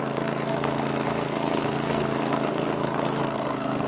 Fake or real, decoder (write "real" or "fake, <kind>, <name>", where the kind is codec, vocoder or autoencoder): fake, codec, SNAC